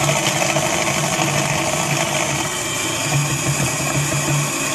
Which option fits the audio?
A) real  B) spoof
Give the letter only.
A